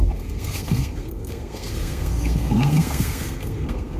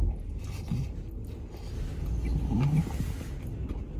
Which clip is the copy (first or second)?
first